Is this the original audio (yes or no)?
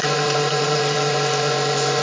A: no